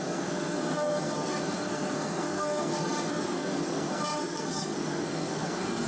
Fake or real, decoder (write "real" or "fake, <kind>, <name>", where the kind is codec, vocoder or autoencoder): fake, codec, SNAC